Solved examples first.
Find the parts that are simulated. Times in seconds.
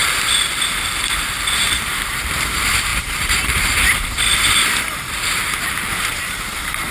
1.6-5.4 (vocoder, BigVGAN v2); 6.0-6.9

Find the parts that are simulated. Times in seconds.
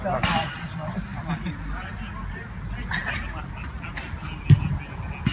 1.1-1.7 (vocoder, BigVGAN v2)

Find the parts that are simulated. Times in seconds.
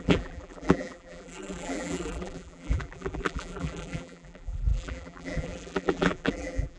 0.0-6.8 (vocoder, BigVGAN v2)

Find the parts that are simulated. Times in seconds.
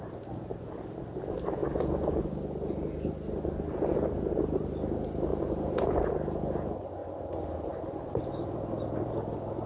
7.0-9.1 (vocoder, BigVGAN v2)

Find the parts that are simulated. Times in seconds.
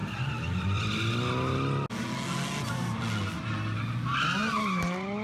0.0-0.9 (vocoder, BigVGAN v2)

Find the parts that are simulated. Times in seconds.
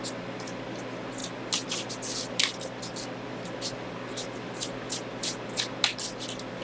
none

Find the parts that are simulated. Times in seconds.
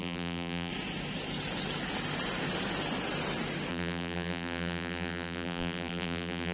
0.0-0.7 (vocoder, BigVGAN v2); 3.7-6.5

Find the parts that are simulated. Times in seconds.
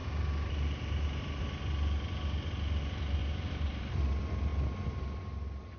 3.2-4.1 (vocoder, BigVGAN v2)